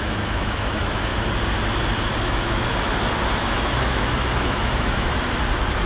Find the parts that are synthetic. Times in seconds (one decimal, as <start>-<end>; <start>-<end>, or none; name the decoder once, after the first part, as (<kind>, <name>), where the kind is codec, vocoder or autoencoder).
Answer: 0.0-1.1 (autoencoder, DAC-VAE); 2.2-2.7; 3.3-5.1